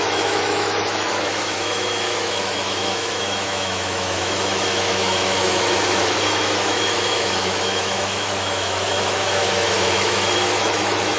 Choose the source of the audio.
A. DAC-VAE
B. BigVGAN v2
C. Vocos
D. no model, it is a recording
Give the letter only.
A